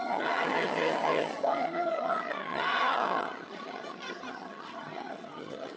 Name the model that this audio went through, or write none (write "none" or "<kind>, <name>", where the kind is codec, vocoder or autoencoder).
vocoder, HiFi-GAN